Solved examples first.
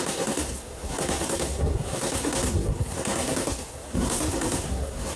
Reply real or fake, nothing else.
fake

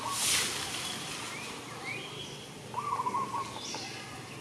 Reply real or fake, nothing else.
real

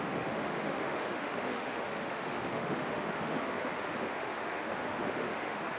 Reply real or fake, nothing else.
fake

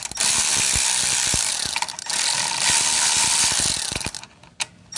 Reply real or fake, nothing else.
fake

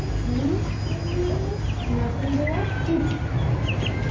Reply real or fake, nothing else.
real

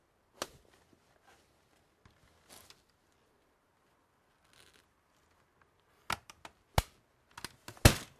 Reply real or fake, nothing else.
real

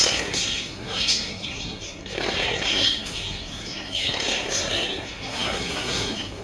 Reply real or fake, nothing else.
fake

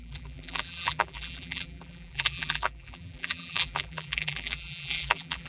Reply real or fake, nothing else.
fake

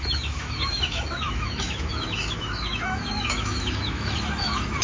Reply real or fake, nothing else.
fake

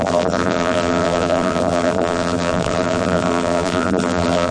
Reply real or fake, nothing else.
fake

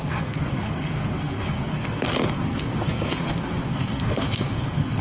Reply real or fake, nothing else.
fake